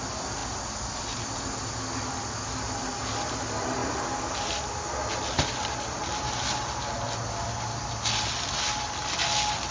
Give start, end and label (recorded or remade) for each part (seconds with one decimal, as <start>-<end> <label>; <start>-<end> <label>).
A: 0.0-9.7 recorded